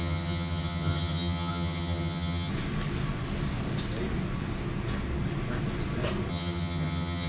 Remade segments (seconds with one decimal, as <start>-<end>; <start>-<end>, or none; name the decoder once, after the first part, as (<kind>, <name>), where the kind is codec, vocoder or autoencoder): 0.0-2.5 (vocoder, HiFi-GAN); 6.3-7.3